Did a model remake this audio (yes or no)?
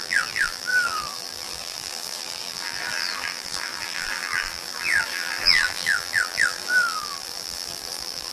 yes